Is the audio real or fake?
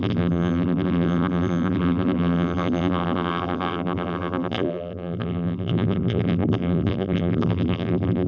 fake